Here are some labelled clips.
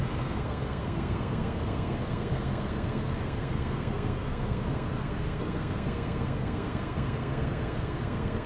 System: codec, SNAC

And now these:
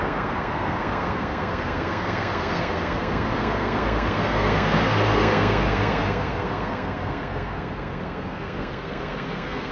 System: codec, SNAC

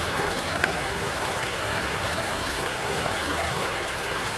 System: codec, SNAC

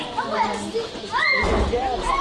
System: none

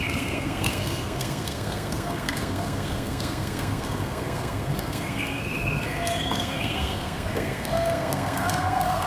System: codec, SNAC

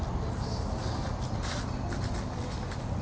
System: none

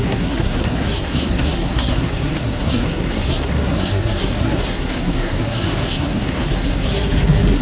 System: codec, SNAC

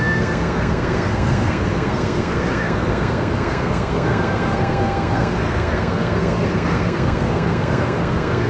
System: codec, SNAC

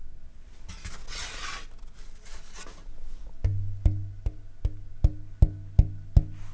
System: none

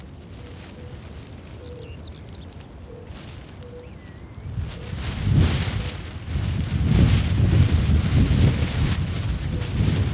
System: none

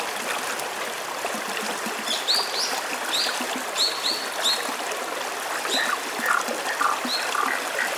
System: none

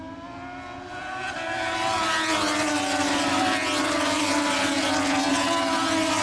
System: none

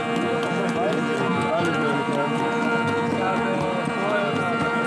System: none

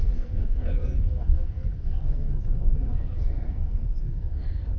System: codec, SNAC